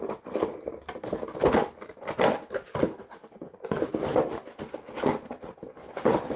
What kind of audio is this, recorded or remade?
recorded